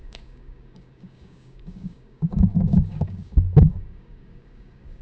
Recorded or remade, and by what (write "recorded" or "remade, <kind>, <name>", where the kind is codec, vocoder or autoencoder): remade, codec, DAC